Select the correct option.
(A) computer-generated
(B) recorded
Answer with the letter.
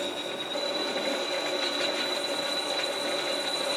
B